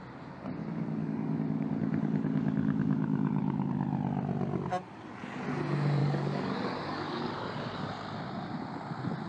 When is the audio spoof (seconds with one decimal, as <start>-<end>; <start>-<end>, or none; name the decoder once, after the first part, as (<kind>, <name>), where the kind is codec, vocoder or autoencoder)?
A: 0.6-3.7 (codec, DAC); 6.0-7.9

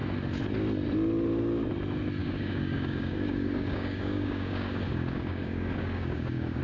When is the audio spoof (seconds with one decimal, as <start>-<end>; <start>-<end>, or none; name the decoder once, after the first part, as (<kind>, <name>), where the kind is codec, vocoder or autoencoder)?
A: 2.2-6.6 (codec, DAC)